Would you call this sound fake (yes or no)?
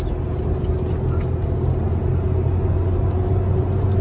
no